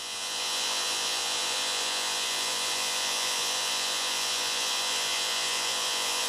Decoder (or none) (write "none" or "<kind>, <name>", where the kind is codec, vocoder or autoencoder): vocoder, Vocos